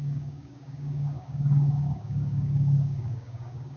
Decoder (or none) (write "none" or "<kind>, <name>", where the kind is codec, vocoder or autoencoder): codec, DAC